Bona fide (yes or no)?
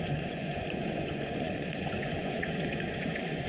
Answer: no